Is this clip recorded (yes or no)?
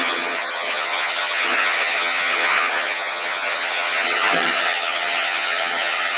no